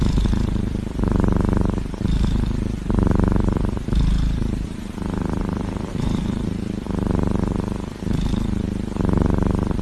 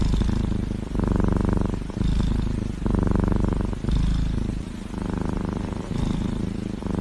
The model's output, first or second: first